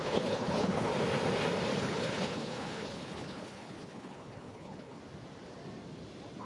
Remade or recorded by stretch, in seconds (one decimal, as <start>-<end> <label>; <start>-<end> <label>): 0.0-0.9 remade; 0.9-1.8 recorded; 1.8-5.0 remade; 5.0-6.4 recorded